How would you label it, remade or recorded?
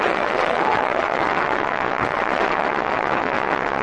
remade